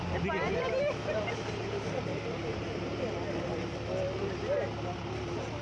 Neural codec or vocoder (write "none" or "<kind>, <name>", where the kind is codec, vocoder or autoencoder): none